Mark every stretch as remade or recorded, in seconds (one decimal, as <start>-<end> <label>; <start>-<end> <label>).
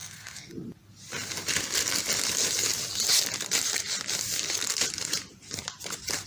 0.0-0.5 remade; 0.5-6.3 recorded